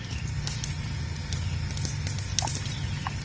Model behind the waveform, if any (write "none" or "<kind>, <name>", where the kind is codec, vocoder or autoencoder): none